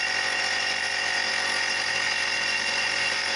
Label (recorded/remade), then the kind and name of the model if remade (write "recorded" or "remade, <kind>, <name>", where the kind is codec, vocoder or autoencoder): remade, vocoder, Vocos